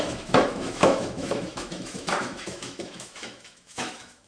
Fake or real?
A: fake